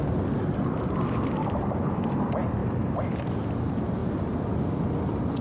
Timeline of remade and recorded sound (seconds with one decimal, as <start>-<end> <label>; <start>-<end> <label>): 0.0-1.4 recorded; 1.4-2.0 remade; 2.0-2.6 recorded; 2.6-3.3 remade; 3.3-4.0 recorded; 4.0-4.6 remade; 4.6-5.4 recorded